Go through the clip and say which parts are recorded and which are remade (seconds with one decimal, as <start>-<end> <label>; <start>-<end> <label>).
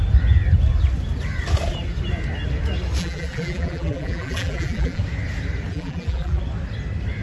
0.0-3.0 recorded; 3.0-5.0 remade; 5.0-5.7 recorded; 5.7-6.4 remade; 6.4-7.2 recorded